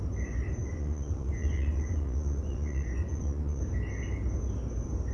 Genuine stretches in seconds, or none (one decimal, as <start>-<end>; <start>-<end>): 0.0-0.6; 3.6-5.1